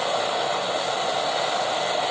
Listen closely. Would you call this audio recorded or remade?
recorded